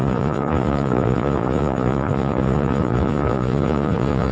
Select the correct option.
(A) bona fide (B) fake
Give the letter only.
B